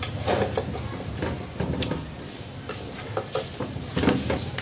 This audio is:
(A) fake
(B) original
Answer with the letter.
B